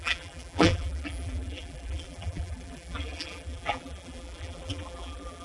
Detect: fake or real fake